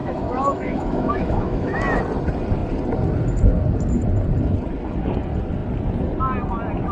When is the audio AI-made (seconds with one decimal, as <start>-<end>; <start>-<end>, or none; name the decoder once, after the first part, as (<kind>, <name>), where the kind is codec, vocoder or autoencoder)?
0.0-2.0 (autoencoder, DAC-VAE)